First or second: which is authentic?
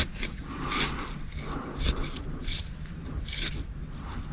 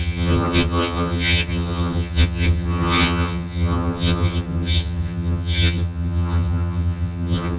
first